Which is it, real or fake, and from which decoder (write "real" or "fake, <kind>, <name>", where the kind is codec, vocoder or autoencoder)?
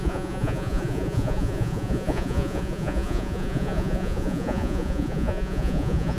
fake, vocoder, Vocos